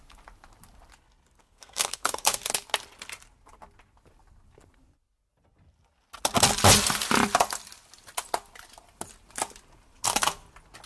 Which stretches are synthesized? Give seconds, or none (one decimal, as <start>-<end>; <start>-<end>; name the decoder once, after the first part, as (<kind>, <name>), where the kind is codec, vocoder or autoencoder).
1.4-2.4 (codec, SNAC)